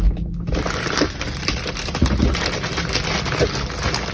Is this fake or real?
real